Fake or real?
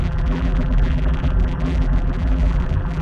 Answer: fake